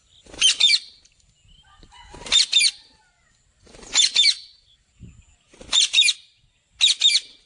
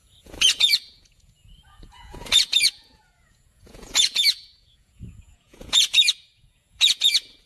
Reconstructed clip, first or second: second